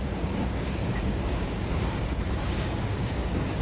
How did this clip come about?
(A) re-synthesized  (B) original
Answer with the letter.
A